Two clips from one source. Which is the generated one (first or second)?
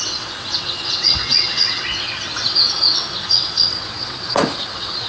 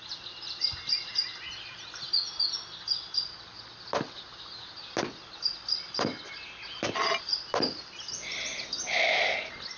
first